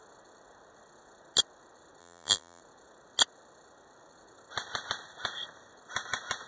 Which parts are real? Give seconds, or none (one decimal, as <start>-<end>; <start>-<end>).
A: 0.0-2.0; 2.6-6.5

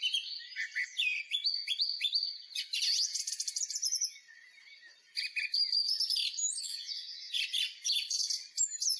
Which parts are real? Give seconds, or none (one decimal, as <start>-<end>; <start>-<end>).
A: 0.0-6.6; 7.3-9.0